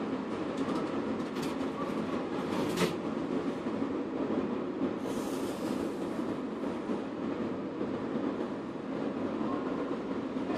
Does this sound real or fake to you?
real